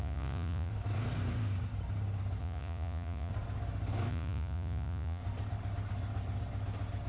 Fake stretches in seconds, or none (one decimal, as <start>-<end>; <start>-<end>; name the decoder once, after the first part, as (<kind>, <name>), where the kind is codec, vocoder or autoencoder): 0.0-0.7 (vocoder, Vocos); 2.4-3.3; 4.1-5.2